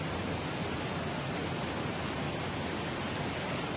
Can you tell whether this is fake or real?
real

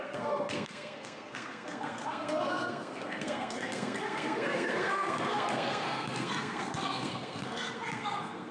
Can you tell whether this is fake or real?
fake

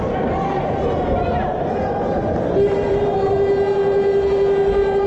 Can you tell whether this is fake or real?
real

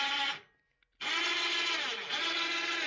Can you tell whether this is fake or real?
real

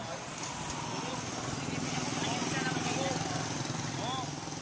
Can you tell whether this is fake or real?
real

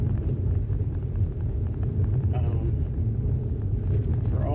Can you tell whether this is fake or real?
real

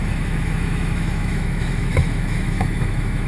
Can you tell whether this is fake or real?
fake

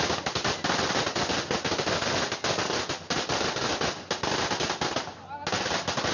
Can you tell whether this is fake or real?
real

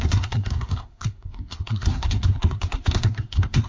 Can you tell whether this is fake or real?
fake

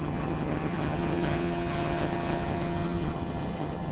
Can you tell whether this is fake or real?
fake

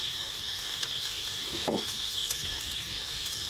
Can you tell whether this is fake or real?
fake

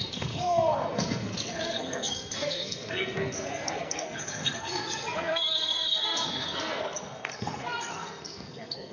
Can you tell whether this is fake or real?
fake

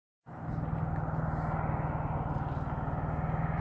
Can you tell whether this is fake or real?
real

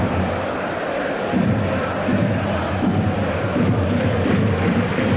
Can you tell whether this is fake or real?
real